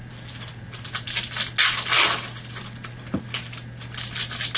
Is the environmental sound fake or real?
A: real